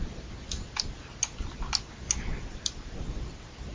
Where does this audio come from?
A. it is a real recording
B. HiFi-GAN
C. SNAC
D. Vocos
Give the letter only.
A